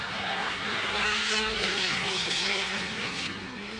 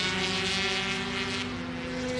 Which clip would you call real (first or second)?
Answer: second